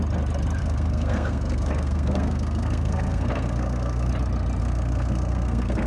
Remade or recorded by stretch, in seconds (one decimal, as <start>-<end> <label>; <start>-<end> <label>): 0.0-0.6 recorded; 0.6-4.1 remade; 4.1-4.6 recorded; 4.6-5.9 remade